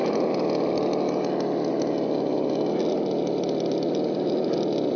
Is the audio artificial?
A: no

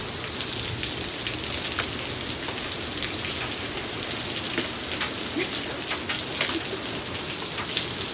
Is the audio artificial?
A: no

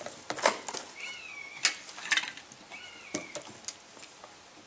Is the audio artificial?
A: no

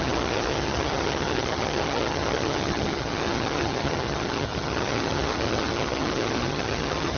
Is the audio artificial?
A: yes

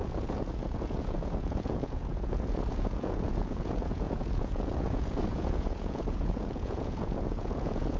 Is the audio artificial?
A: yes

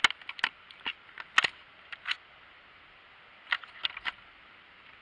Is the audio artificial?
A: no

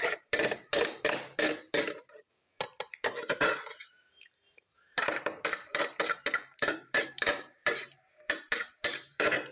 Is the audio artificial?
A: yes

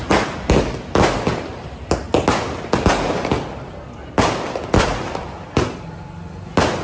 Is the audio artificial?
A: no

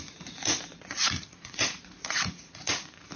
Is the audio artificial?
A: yes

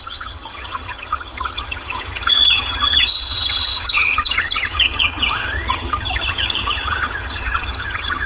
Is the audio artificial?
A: yes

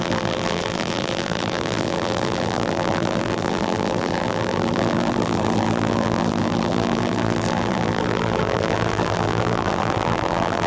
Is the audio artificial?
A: yes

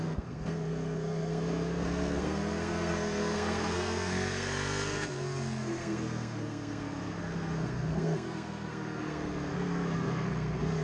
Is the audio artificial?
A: yes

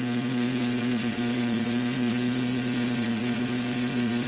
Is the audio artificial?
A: yes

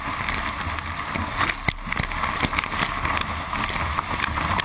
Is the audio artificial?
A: no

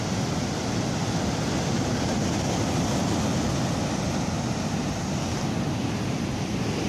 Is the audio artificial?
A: no